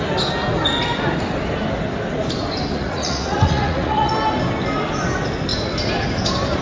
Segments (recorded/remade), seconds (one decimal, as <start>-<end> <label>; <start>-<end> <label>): 0.0-2.7 recorded; 2.7-4.1 remade; 4.1-6.6 recorded